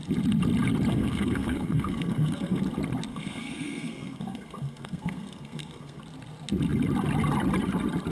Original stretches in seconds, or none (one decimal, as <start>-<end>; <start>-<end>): 0.0-0.9; 2.6-3.1; 6.0-8.1